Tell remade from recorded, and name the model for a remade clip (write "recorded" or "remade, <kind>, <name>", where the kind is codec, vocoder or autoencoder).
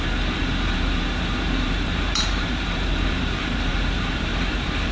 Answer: remade, vocoder, BigVGAN v2